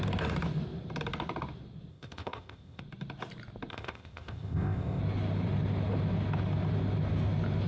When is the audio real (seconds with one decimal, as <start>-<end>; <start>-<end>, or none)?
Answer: 0.0-1.9; 2.8-3.7; 5.0-7.7